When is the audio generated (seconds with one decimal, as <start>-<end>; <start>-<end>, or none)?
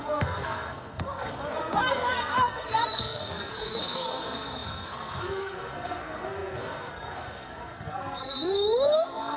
0.0-9.4